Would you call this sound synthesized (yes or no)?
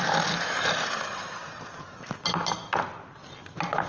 no